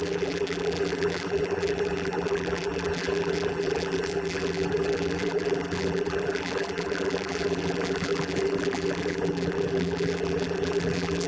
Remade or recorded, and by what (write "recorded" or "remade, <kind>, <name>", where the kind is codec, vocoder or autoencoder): remade, vocoder, BigVGAN v2